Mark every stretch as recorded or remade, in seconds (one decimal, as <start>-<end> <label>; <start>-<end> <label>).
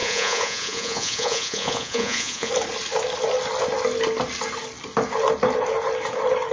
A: 0.0-2.5 remade; 2.5-6.5 recorded